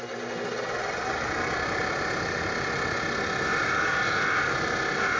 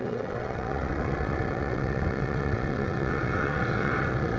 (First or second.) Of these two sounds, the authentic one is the first